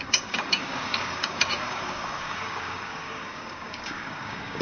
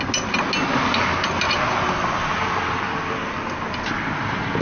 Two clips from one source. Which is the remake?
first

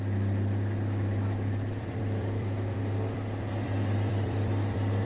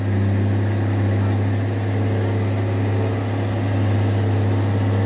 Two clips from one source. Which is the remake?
first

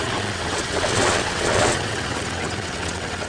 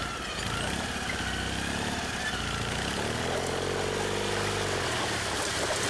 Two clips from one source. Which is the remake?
first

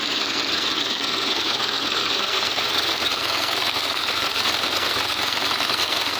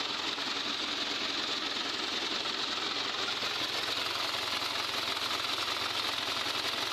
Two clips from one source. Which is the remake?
first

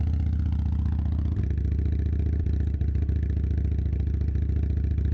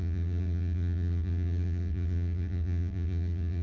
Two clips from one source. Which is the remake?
second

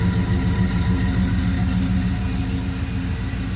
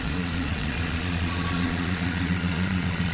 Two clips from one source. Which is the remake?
second